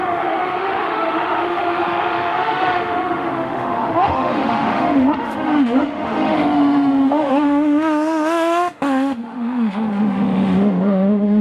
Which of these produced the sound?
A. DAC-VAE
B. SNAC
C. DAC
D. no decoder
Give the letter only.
A